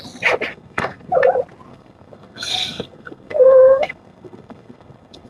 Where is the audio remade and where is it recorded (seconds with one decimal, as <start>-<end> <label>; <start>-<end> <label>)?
0.0-0.5 recorded; 0.5-1.1 remade; 1.1-1.7 recorded; 1.7-5.3 remade